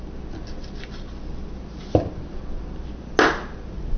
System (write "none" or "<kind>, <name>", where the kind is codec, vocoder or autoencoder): none